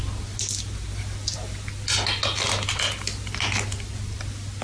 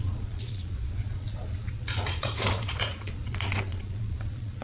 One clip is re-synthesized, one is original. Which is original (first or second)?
first